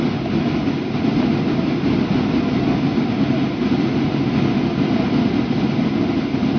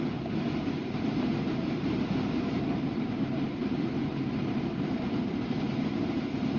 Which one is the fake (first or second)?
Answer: second